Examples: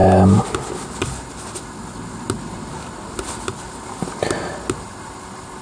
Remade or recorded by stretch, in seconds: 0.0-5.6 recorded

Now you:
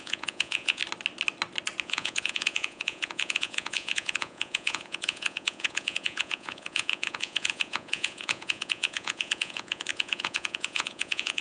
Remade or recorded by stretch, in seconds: 0.0-0.8 remade; 0.8-1.8 recorded; 1.8-11.4 remade

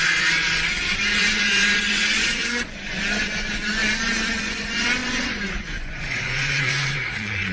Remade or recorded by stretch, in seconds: 0.0-3.8 remade; 3.8-4.4 recorded; 4.4-7.5 remade

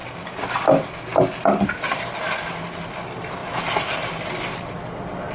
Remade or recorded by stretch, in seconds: 0.0-5.3 recorded

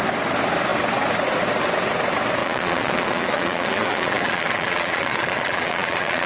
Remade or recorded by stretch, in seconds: 0.0-2.4 recorded; 2.4-6.3 remade

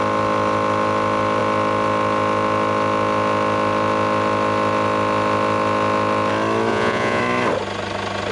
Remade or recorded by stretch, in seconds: 0.0-6.7 recorded; 6.7-7.2 remade; 7.2-8.3 recorded

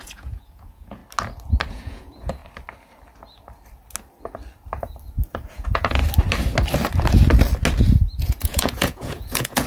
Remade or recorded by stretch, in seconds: 0.0-1.0 remade; 1.0-1.7 recorded; 1.7-2.4 remade; 2.4-5.5 recorded; 5.5-6.0 remade; 6.0-8.2 recorded; 8.2-9.7 remade